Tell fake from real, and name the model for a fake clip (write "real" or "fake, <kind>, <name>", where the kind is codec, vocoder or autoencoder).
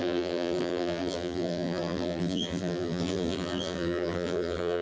fake, vocoder, BigVGAN v2